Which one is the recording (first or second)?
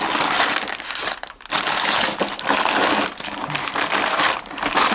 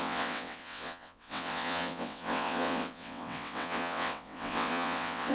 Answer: first